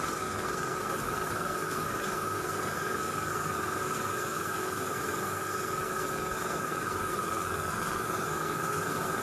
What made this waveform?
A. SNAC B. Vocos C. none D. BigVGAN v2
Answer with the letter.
A